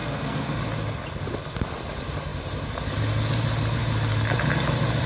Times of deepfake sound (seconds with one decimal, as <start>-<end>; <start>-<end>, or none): 0.0-0.6